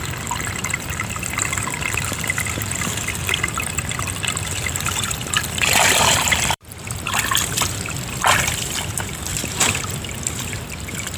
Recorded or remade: remade